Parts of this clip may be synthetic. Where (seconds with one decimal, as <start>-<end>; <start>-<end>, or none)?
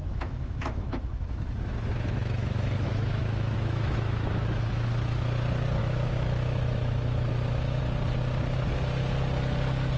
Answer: 0.0-4.9; 5.8-7.8